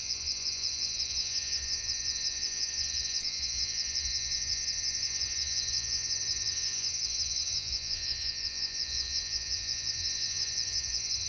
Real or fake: fake